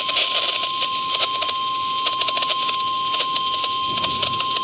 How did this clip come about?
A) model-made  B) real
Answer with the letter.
B